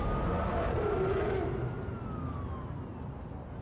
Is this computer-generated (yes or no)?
no